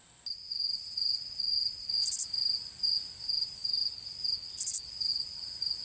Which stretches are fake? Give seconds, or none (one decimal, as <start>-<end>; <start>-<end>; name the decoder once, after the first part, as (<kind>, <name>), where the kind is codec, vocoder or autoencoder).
none